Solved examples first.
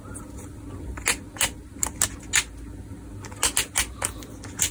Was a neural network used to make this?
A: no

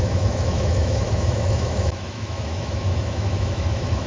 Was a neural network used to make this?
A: yes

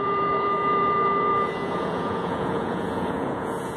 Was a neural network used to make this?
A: yes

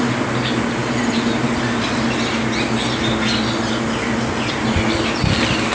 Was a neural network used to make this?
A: no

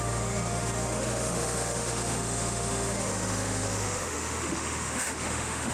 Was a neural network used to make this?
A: yes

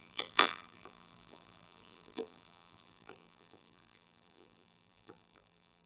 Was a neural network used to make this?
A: yes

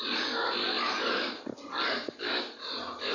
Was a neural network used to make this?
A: no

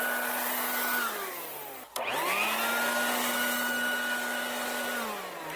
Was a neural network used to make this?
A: no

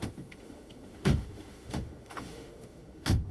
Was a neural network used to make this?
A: yes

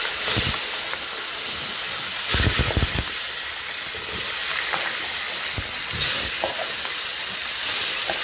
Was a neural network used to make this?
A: no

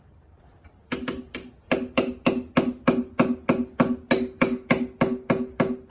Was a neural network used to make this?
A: no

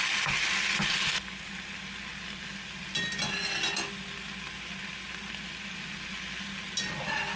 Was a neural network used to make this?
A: no